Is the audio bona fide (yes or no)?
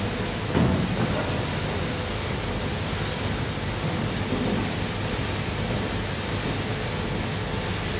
yes